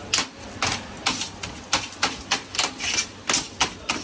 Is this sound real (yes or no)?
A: yes